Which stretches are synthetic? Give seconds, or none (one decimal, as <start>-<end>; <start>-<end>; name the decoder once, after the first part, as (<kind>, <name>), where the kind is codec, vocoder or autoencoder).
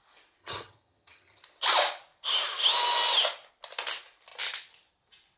0.4-1.4 (vocoder, HiFi-GAN)